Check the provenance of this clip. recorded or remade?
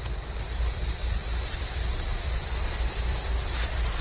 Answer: remade